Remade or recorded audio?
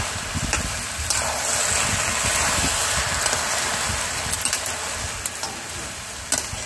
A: recorded